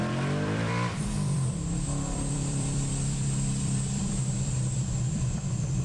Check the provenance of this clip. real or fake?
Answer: fake